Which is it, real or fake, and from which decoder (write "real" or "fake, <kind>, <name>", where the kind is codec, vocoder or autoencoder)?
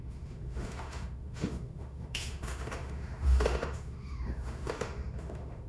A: fake, autoencoder, DAC-VAE